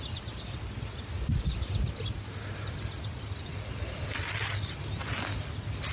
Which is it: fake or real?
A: real